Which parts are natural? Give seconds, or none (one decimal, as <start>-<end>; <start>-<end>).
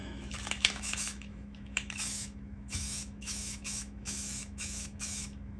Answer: none